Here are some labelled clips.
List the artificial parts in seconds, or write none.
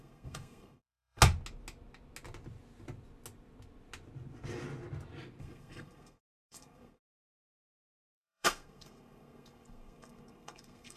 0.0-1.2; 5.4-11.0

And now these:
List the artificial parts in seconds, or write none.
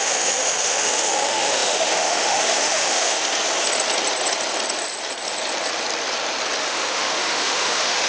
0.0-3.2; 6.6-8.1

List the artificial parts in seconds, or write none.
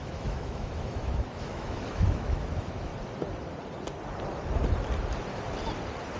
0.0-2.9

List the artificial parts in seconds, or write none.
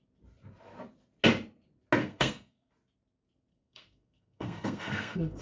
2.0-2.7; 3.5-5.4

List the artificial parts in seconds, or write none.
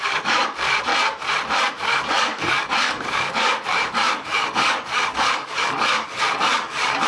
0.0-0.9; 1.7-7.1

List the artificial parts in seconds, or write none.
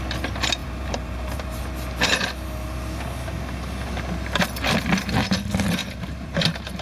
0.6-1.6; 5.8-6.8